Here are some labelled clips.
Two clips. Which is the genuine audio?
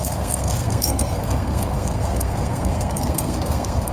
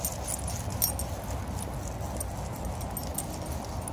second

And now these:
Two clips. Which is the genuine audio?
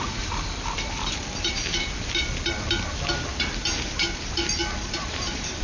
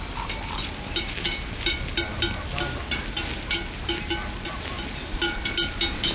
second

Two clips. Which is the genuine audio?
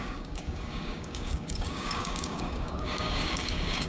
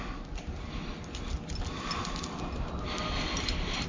second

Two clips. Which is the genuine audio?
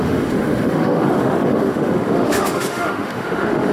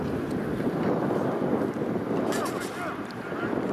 second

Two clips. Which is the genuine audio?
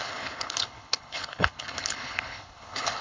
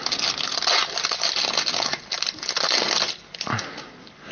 second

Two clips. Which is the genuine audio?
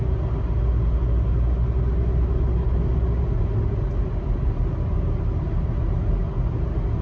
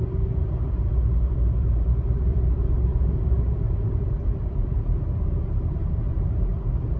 first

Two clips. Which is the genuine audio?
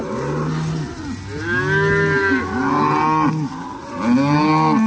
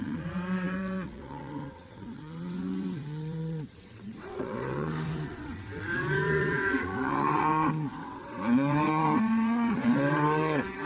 first